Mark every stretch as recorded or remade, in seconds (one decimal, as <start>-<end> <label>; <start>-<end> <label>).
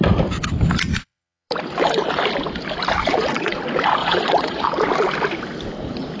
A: 0.0-0.9 recorded; 0.9-1.5 remade; 1.5-3.0 recorded; 3.0-3.6 remade; 3.6-4.0 recorded; 4.0-4.8 remade; 4.8-6.2 recorded